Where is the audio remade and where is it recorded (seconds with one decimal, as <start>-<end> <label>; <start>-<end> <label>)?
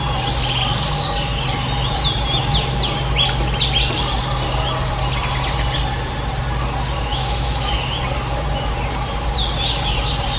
0.0-7.1 recorded; 7.1-7.7 remade; 7.7-10.4 recorded